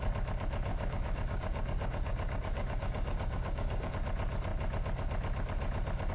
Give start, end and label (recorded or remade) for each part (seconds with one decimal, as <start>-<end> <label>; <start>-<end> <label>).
0.0-0.7 recorded; 0.7-3.9 remade; 3.9-6.1 recorded